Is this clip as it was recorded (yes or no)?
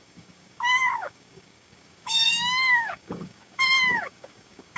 no